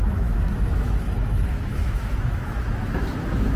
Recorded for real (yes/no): no